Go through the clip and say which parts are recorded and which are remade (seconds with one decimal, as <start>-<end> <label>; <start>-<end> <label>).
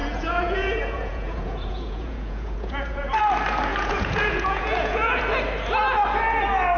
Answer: 0.0-3.2 remade; 3.2-3.7 recorded; 3.7-5.2 remade; 5.2-6.8 recorded